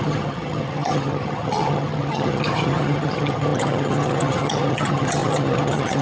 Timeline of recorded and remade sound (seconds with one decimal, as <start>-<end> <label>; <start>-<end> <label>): 0.0-6.0 remade